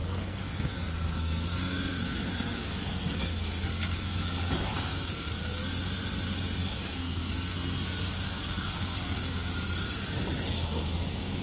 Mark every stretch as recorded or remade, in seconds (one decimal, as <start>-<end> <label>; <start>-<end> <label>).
0.0-5.7 remade; 5.7-6.6 recorded; 6.6-9.5 remade; 9.5-10.5 recorded; 10.5-11.4 remade